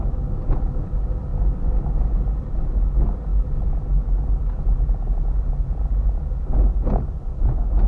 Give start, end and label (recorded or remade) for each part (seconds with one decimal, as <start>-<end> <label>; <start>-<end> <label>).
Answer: 0.0-7.9 recorded